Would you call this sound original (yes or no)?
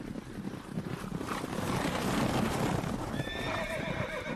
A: no